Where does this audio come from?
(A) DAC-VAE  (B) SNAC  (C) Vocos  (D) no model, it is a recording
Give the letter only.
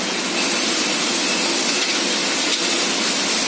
D